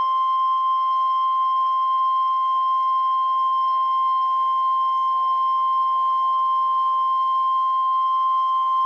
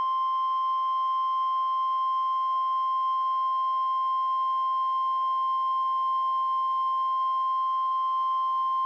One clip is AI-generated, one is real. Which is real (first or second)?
second